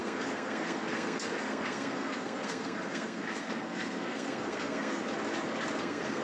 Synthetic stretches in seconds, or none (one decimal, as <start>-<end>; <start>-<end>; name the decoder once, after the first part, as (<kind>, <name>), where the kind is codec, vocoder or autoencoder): 0.0-5.0 (codec, SNAC); 5.8-6.2